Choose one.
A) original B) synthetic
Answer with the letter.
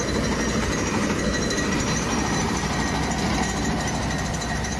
B